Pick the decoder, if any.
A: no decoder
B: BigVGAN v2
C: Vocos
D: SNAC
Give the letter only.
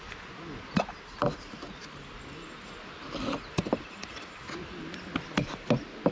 A